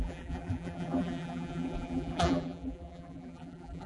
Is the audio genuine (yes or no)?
no